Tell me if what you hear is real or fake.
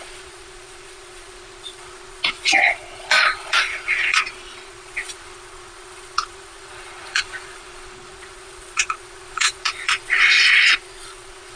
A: fake